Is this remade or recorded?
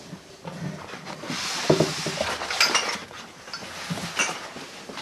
recorded